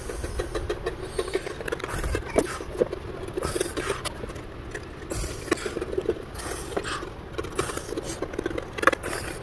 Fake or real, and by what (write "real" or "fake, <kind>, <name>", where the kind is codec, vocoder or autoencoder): real